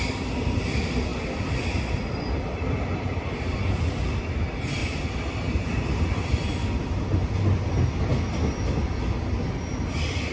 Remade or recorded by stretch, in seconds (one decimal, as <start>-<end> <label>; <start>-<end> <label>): 0.0-10.3 recorded